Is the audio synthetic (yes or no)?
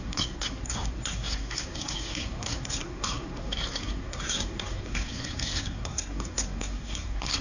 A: yes